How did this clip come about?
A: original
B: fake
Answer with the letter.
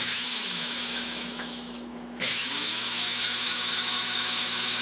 B